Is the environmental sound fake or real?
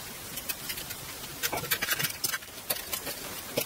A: fake